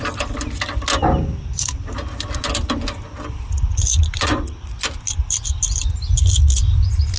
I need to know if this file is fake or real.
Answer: real